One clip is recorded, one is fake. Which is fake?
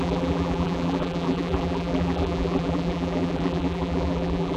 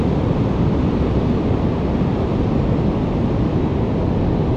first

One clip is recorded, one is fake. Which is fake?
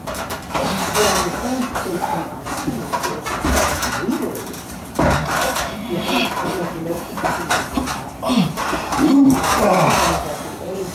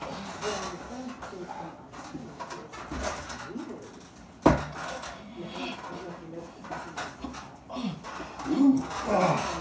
first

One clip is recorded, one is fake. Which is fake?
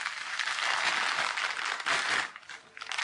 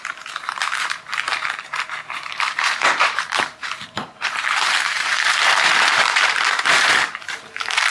second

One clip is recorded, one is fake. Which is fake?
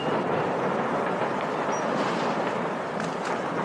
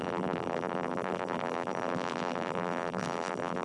second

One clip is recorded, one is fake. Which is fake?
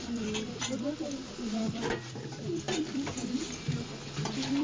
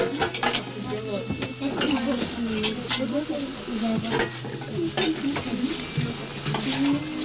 first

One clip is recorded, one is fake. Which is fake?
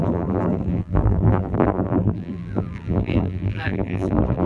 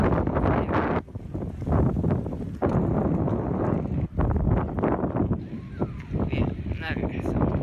first